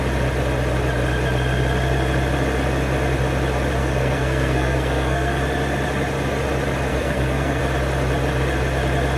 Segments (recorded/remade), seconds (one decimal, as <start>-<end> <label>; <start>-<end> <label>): 0.0-3.8 recorded; 3.8-5.4 remade; 5.4-6.9 recorded; 6.9-7.6 remade; 7.6-9.2 recorded